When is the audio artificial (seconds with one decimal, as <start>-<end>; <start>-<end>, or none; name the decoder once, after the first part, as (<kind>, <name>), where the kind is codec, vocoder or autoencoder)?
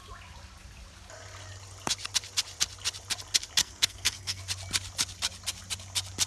3.6-4.4 (codec, SNAC)